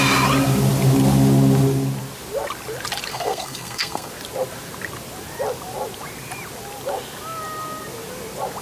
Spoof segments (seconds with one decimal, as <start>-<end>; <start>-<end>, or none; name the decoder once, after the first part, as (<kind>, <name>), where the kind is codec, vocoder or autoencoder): 3.1-4.1 (codec, SNAC)